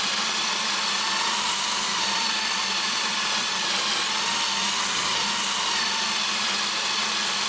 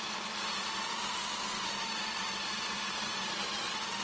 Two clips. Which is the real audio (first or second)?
second